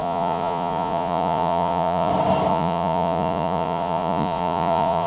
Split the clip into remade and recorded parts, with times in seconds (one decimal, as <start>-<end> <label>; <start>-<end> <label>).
0.0-2.1 remade; 2.1-2.5 recorded; 2.5-5.1 remade